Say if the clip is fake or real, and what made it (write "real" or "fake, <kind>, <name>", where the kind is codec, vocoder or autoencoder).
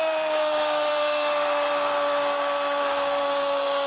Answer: fake, codec, DAC